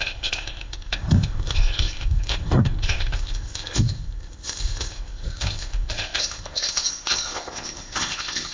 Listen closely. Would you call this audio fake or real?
fake